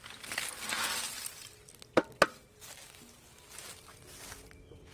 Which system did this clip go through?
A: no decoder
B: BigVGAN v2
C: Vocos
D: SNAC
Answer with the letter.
A